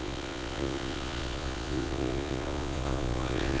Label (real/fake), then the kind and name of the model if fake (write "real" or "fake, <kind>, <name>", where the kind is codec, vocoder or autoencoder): fake, vocoder, Vocos